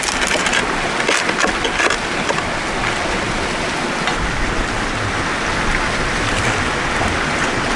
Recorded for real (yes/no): yes